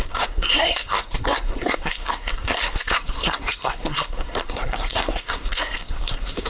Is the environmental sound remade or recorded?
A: remade